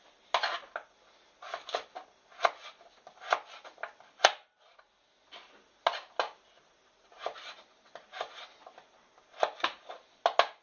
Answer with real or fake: real